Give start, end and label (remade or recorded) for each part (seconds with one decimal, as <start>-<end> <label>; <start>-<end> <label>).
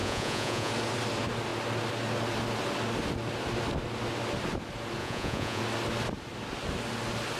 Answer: 0.0-0.7 remade; 0.7-5.0 recorded; 5.0-5.6 remade; 5.6-7.4 recorded